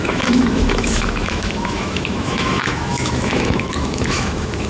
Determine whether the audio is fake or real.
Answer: fake